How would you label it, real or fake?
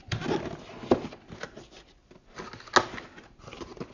real